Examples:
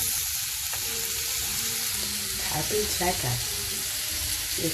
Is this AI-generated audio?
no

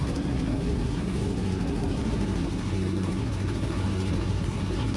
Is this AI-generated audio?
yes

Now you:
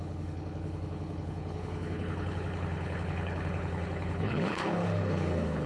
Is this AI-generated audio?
yes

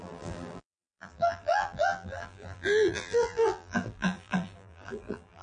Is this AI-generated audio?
yes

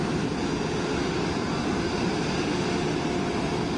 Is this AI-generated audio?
no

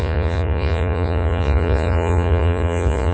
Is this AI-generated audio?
yes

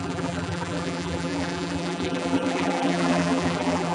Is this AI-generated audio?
yes